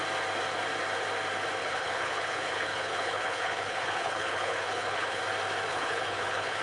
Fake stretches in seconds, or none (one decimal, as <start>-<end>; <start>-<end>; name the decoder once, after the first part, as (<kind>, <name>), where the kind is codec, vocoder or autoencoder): 1.6-5.2 (codec, HILCodec); 5.7-6.6